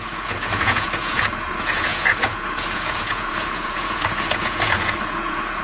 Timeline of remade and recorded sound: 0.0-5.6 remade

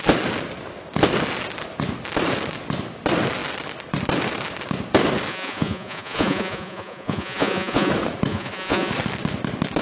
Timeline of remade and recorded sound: 0.0-5.3 recorded; 5.3-7.9 remade; 7.9-8.3 recorded; 8.3-8.9 remade; 8.9-9.8 recorded

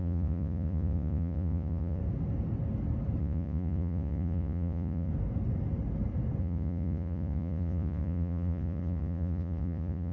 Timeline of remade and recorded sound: 0.0-2.0 remade; 2.0-3.2 recorded; 3.2-5.1 remade; 5.1-6.4 recorded; 6.4-10.1 remade

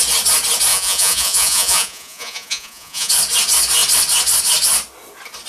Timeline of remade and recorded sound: 0.0-0.7 recorded; 0.7-3.1 remade; 3.1-5.5 recorded

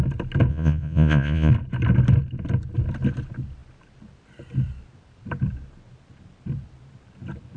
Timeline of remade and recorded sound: 0.0-0.5 recorded; 0.5-1.5 remade; 1.5-7.6 recorded

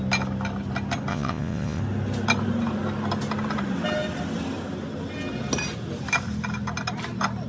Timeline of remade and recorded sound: 0.0-1.1 recorded; 1.1-1.8 remade; 1.8-7.5 recorded

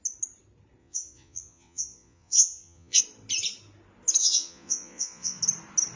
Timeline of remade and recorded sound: 0.0-0.8 recorded; 0.8-3.0 remade; 3.0-4.2 recorded; 4.2-5.4 remade; 5.4-6.0 recorded

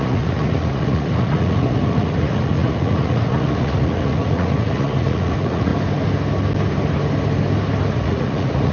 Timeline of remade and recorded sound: 0.0-5.7 remade; 5.7-7.9 recorded; 7.9-8.7 remade